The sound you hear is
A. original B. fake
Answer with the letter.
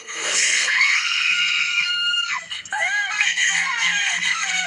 B